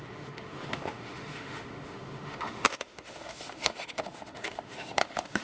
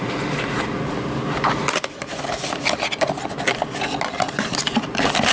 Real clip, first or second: second